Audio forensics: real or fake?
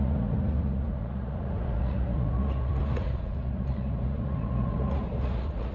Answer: fake